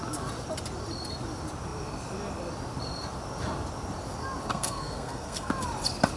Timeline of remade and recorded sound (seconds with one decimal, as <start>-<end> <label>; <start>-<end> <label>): 0.0-4.5 recorded; 4.5-5.5 remade; 5.5-6.2 recorded